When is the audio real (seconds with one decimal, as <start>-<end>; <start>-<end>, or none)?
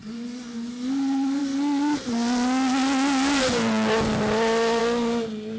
0.0-5.6